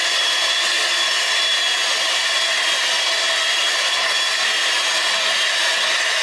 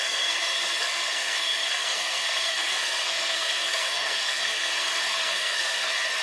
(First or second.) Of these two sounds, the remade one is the second